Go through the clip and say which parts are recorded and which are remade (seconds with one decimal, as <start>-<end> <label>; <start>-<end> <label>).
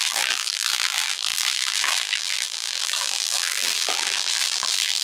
0.0-5.0 remade